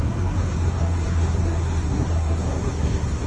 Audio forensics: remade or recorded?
remade